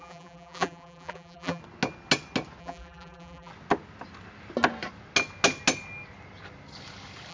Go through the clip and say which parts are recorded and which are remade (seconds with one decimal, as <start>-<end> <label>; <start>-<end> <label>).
0.0-1.6 remade; 1.6-2.6 recorded; 2.6-3.5 remade; 3.5-7.3 recorded